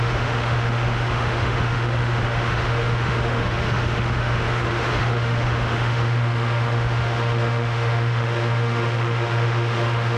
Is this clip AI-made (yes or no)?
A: yes